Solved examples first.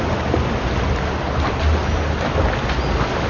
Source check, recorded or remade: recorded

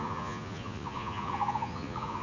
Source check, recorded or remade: remade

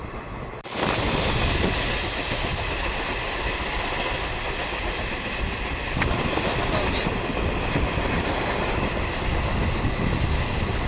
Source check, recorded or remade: recorded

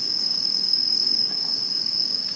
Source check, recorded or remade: remade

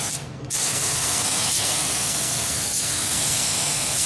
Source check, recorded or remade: remade